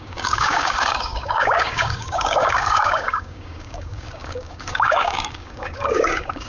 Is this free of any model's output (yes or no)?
no